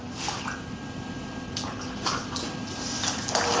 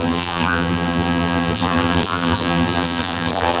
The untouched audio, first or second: first